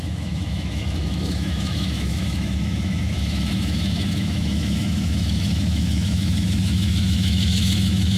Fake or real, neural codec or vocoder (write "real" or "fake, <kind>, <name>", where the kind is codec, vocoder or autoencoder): fake, autoencoder, DAC-VAE